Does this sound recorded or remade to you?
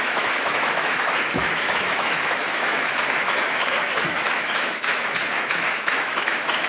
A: remade